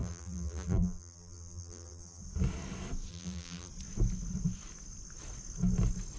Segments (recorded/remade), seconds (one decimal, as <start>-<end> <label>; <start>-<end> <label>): 0.0-2.2 remade; 2.2-3.1 recorded; 3.1-3.7 remade; 3.7-6.2 recorded

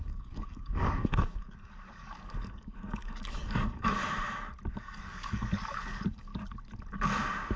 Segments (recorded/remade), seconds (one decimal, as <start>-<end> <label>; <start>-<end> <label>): 0.0-4.0 remade; 4.0-4.7 recorded; 4.7-6.3 remade; 6.3-7.6 recorded